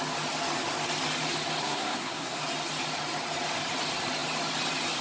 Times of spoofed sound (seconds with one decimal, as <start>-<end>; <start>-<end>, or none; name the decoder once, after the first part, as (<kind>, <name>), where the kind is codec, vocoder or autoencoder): 1.6-2.4 (codec, SNAC)